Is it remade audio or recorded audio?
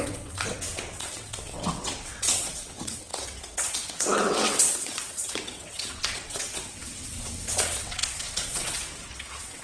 remade